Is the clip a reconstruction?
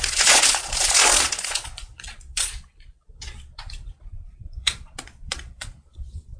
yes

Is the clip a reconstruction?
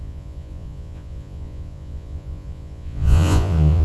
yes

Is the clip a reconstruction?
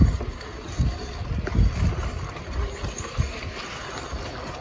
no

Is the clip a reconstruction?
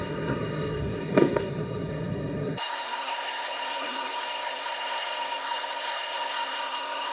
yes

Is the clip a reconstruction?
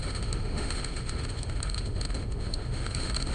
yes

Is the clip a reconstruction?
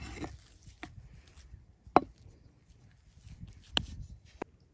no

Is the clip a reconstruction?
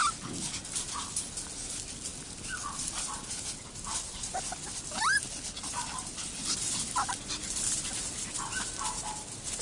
no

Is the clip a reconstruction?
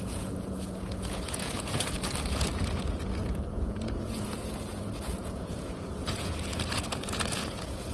yes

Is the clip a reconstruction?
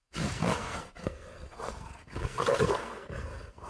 yes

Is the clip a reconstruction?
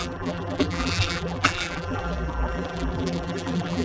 yes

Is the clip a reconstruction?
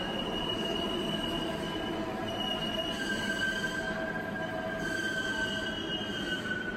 no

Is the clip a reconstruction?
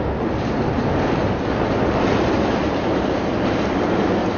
no